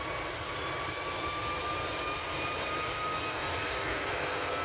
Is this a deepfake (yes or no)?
no